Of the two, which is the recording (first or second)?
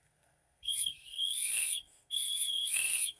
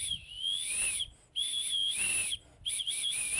second